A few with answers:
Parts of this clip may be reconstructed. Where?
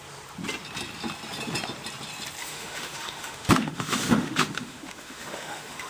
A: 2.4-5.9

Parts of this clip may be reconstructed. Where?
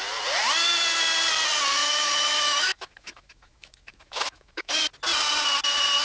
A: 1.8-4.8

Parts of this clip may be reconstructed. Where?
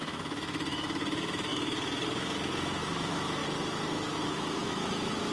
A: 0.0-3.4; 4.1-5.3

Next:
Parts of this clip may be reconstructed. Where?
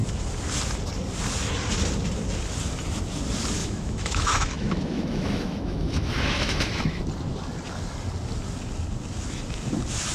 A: 3.6-7.0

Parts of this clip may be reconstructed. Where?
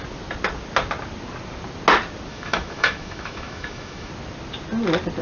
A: 2.3-4.1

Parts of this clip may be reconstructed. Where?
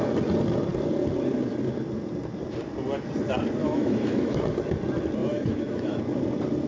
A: 3.6-4.4; 5.2-6.0